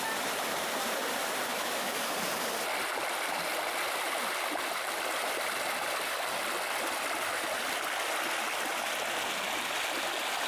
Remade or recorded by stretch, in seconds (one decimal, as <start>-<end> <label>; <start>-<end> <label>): 0.0-1.5 recorded; 1.5-2.1 remade; 2.1-10.5 recorded